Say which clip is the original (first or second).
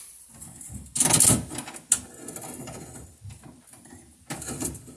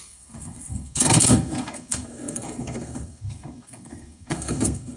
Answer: first